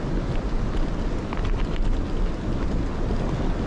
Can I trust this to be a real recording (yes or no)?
yes